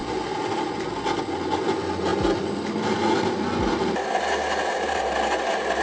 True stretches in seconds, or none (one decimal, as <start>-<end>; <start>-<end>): 0.6-5.8